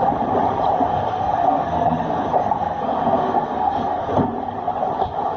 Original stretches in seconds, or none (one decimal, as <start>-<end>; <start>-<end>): 0.0-0.9; 4.1-5.4

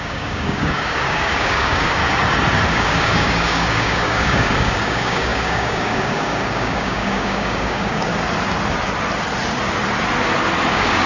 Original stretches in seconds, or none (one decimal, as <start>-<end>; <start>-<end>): 2.0-2.7; 8.1-10.7

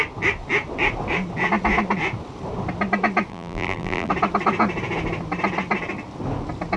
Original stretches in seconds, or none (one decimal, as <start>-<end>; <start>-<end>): 0.0-3.3; 4.1-6.8

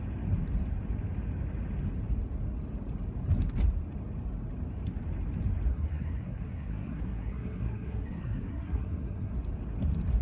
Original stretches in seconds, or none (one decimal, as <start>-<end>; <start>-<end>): 0.0-5.7; 9.3-10.2

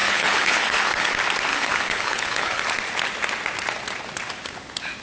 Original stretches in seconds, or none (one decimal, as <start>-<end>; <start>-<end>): 1.1-1.5; 2.6-5.0

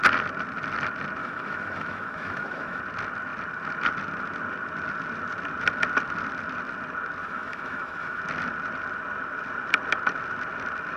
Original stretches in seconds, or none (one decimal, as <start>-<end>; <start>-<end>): 0.0-1.2; 2.8-7.2; 8.2-11.0